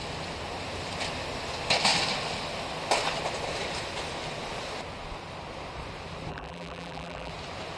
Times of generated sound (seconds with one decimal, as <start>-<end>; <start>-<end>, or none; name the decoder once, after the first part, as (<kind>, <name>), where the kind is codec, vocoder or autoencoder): 6.3-7.3 (vocoder, BigVGAN v2)